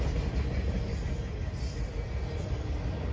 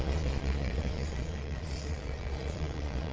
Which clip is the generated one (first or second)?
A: second